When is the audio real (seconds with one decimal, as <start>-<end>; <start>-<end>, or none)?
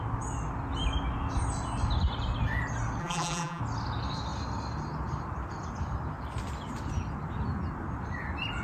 0.0-3.0; 3.6-8.6